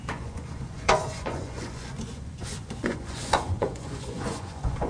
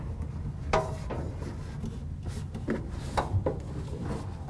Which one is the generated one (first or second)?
first